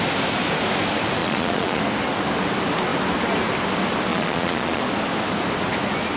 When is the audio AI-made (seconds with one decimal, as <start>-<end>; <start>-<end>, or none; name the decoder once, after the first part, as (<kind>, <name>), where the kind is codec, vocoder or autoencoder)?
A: 1.2-1.8 (vocoder, Vocos); 4.1-4.8